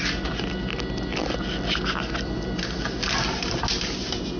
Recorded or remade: recorded